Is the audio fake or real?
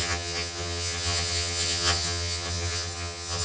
fake